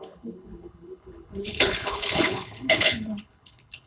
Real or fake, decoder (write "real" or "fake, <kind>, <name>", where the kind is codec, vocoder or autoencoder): fake, codec, HILCodec